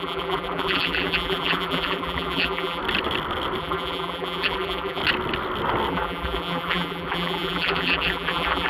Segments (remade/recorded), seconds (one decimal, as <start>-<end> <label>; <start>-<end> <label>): 0.0-2.8 remade; 2.8-3.6 recorded; 3.6-5.0 remade; 5.0-5.9 recorded; 5.9-8.7 remade